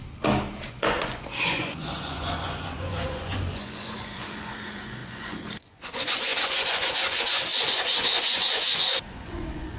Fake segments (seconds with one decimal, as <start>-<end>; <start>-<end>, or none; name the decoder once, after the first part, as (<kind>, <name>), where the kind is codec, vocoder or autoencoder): 0.7-9.8 (vocoder, Vocos)